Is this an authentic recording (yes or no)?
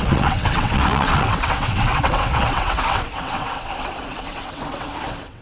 no